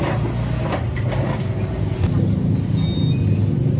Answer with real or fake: real